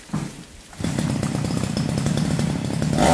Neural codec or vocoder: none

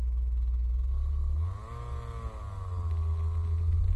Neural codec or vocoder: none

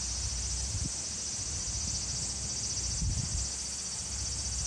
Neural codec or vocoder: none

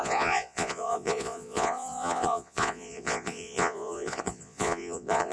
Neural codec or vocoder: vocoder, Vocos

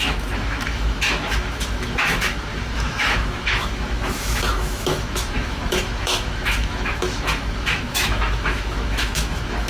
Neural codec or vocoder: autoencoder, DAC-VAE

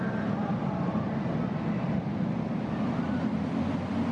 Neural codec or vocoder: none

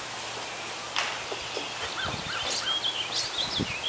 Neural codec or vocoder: none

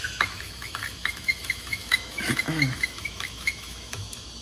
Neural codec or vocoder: autoencoder, DAC-VAE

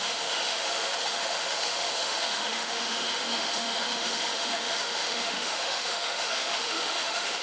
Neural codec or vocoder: autoencoder, DAC-VAE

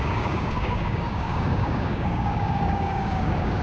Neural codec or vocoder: codec, DAC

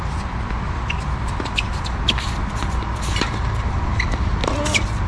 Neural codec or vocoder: none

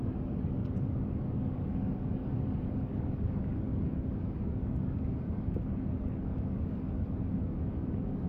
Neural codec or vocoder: codec, DAC